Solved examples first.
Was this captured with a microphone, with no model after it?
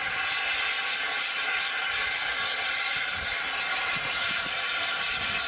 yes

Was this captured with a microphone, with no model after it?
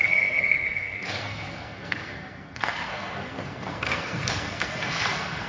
no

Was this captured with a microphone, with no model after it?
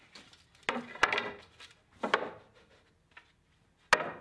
yes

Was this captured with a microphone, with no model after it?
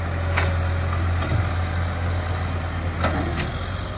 yes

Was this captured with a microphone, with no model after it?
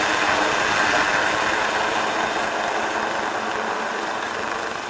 yes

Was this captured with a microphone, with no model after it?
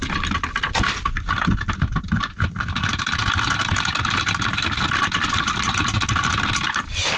yes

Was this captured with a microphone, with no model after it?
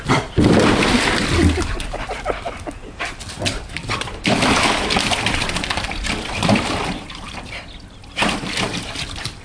no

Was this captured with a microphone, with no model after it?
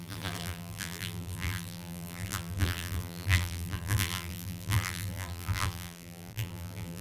no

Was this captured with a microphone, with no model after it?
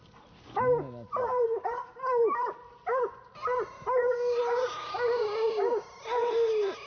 yes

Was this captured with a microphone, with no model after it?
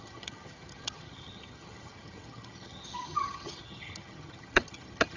no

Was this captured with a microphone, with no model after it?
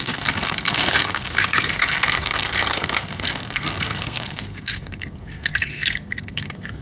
no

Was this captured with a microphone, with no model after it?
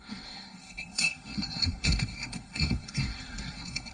no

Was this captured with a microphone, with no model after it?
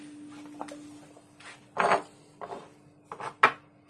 yes